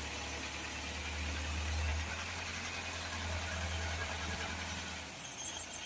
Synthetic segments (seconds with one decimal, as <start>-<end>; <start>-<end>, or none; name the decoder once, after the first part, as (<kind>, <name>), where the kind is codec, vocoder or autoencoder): 1.9-2.5 (vocoder, BigVGAN v2); 4.0-4.5